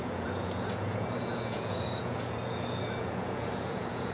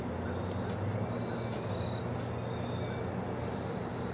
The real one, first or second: second